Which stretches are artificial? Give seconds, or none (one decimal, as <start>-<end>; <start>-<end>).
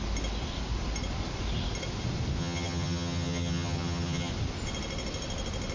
2.4-4.3